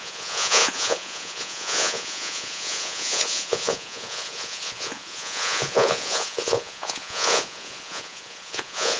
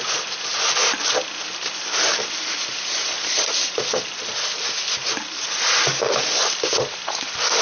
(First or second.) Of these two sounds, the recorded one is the second